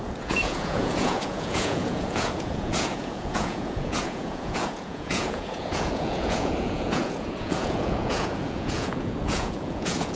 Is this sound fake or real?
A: fake